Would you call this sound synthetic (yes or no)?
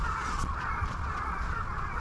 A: yes